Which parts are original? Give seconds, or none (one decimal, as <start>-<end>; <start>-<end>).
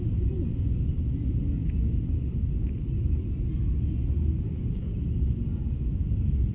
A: 0.0-6.5